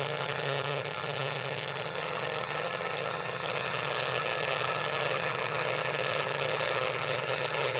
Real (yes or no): no